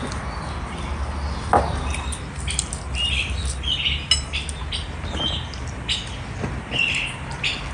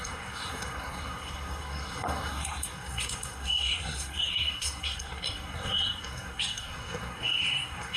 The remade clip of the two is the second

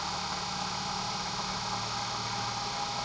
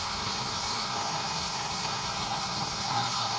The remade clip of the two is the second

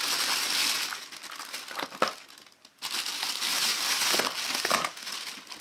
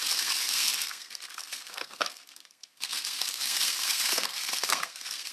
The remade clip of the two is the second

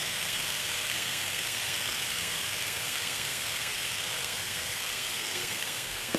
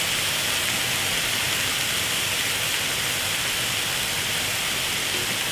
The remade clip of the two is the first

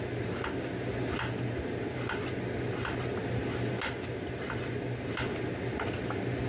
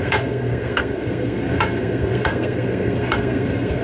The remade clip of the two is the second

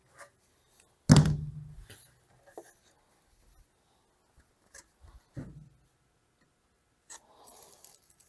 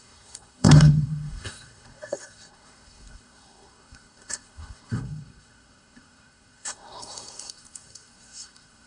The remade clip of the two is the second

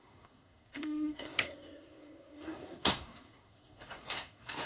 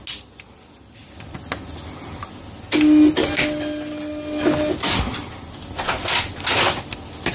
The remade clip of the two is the first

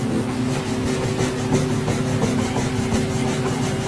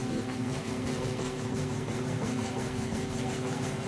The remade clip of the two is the second